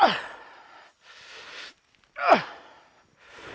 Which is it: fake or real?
real